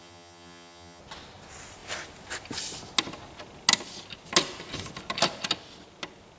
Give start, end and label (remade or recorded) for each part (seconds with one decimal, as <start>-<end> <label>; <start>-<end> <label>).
0.0-1.0 remade; 1.0-6.4 recorded